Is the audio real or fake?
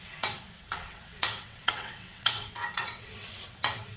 fake